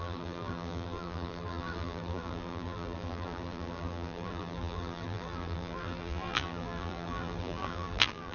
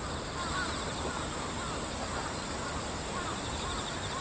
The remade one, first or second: first